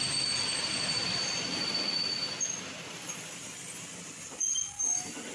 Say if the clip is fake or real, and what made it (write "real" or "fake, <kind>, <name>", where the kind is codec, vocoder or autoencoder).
real